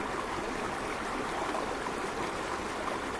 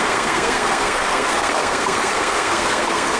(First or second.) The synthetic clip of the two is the second